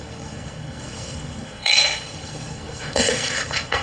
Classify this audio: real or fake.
fake